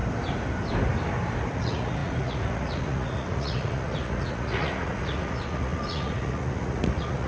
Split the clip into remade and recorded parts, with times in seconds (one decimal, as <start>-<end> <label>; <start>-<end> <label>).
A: 0.0-1.5 recorded; 1.5-7.3 remade